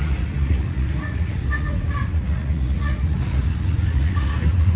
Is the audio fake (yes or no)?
yes